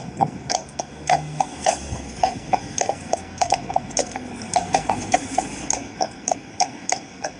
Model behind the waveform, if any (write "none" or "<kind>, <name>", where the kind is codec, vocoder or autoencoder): codec, SNAC